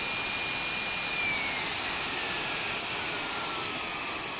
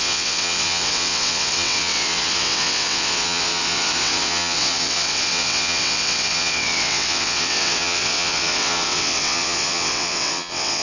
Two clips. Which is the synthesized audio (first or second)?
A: second